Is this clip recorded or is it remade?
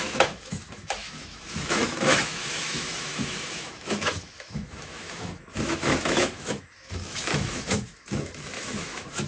remade